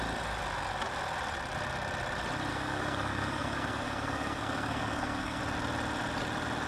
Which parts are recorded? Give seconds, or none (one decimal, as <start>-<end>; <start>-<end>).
0.0-2.5; 5.4-6.7